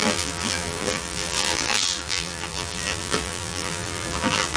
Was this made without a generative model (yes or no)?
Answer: no